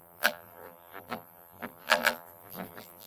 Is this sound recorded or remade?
remade